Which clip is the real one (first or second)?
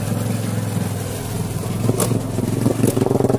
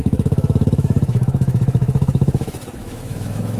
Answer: first